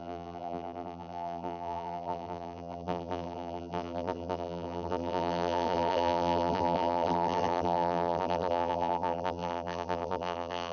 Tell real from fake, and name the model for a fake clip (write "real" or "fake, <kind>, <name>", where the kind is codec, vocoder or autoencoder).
fake, vocoder, BigVGAN v2